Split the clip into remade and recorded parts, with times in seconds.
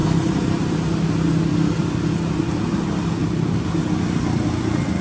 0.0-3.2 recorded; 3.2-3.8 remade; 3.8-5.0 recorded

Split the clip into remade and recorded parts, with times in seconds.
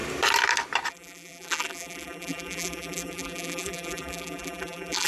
0.0-0.9 recorded; 0.9-5.1 remade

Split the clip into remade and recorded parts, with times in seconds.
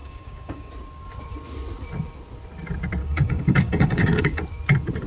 0.0-0.7 remade; 0.7-3.0 recorded; 3.0-4.4 remade; 4.4-5.1 recorded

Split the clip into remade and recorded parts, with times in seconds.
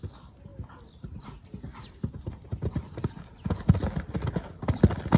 0.0-5.2 recorded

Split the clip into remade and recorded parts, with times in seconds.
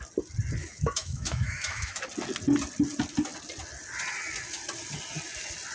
0.0-0.6 recorded; 0.6-2.0 remade; 2.0-5.7 recorded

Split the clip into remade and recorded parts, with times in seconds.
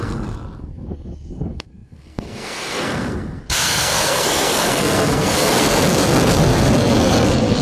0.0-7.6 remade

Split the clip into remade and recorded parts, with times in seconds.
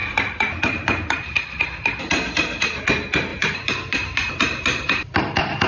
0.0-1.5 remade; 1.5-3.3 recorded; 3.3-5.2 remade; 5.2-5.7 recorded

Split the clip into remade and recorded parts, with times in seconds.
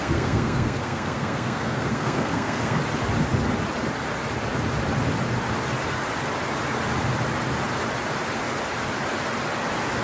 0.0-2.8 remade; 2.8-10.0 recorded